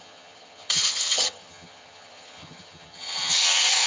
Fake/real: fake